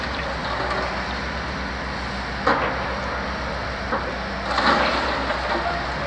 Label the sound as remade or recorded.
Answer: recorded